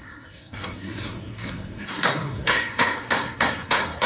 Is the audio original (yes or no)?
no